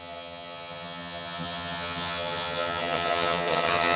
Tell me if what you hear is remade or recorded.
remade